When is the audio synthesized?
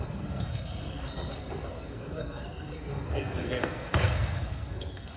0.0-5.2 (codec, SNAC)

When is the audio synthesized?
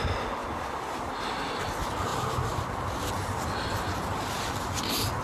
none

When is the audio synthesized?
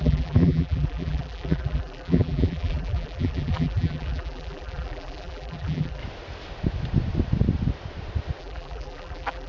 0.0-6.0 (vocoder, BigVGAN v2); 8.4-9.5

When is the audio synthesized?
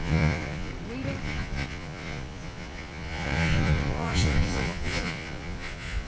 0.0-0.7 (vocoder, Vocos); 1.2-6.1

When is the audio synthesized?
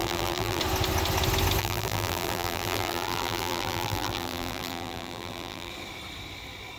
0.0-0.6 (vocoder, BigVGAN v2); 1.6-5.7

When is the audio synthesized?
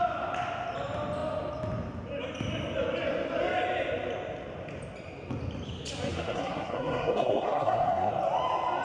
6.1-8.1 (codec, SNAC)